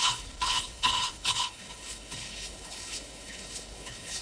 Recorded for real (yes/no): no